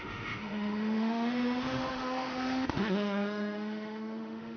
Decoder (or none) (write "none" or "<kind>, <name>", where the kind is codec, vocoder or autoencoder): autoencoder, DAC-VAE